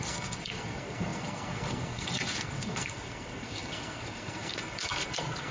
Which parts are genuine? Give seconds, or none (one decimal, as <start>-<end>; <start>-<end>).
none